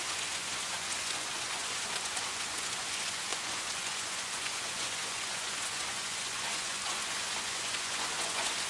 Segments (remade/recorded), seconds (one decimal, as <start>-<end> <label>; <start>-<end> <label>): 0.0-8.7 remade